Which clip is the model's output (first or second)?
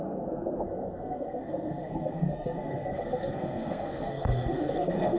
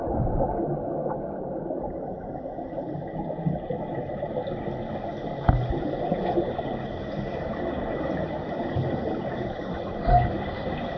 first